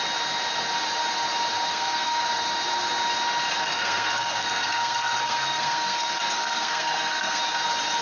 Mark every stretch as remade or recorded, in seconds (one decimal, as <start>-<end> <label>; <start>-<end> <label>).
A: 0.0-1.7 recorded; 1.7-2.3 remade; 2.3-3.6 recorded; 3.6-7.4 remade; 7.4-8.0 recorded